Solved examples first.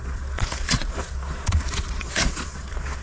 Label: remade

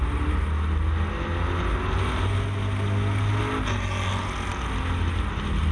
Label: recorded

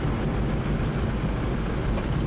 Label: recorded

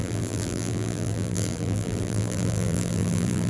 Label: remade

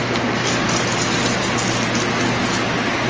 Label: recorded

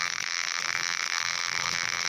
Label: remade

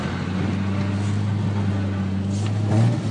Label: recorded